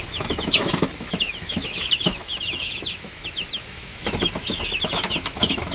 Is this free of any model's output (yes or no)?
no